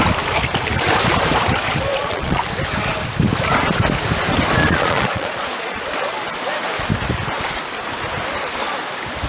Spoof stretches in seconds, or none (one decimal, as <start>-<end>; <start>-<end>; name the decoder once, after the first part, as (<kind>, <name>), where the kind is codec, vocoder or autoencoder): 1.9-2.4 (vocoder, Vocos); 4.6-5.8